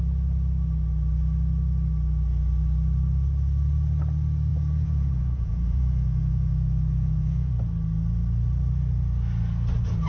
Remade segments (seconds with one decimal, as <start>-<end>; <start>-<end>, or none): 4.5-7.5

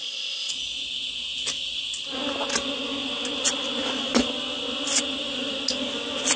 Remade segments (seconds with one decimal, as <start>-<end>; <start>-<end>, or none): 0.0-0.5

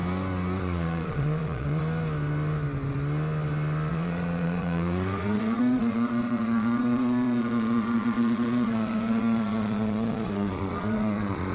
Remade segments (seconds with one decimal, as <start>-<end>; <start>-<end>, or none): 0.6-1.8; 3.9-11.5

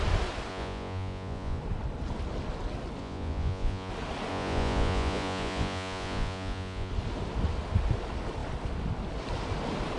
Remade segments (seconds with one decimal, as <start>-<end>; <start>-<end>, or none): 0.5-1.6; 3.0-3.9; 4.3-6.9

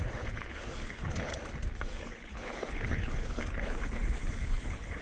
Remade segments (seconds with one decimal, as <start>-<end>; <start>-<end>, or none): 0.0-1.3; 2.0-5.0

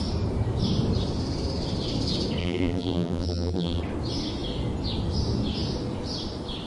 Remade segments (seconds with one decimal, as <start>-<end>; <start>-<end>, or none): 2.4-3.8

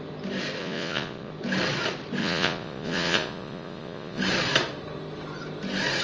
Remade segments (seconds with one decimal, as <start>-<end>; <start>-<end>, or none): 0.6-1.3; 2.2-4.2